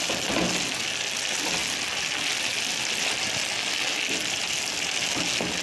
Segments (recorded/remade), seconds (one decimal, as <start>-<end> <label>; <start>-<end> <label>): 0.0-5.6 recorded